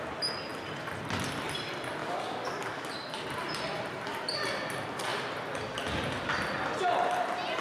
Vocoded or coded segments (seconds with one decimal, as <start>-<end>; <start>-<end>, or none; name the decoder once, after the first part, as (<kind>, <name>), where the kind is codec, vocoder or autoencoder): 2.0-2.9 (codec, DAC)